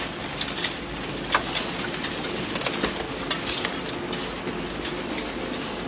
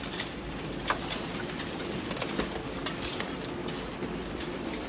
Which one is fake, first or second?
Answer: second